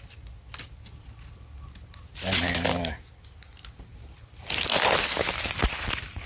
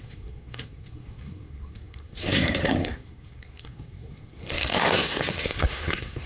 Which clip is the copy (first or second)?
second